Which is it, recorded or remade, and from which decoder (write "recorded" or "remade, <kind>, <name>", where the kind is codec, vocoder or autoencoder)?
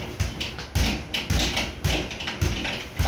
recorded